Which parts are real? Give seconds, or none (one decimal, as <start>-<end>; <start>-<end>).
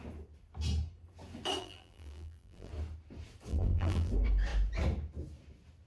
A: 0.0-1.6; 2.7-3.5; 4.1-5.9